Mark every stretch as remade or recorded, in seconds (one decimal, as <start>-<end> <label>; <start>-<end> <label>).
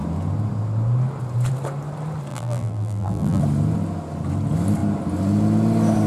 0.0-2.3 recorded; 2.3-3.4 remade; 3.4-6.1 recorded